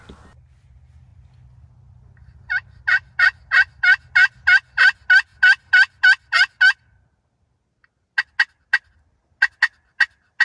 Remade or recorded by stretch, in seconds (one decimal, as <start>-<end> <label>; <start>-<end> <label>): 0.0-10.4 recorded